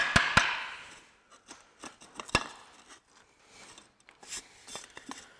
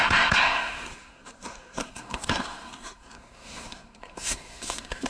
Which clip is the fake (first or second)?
second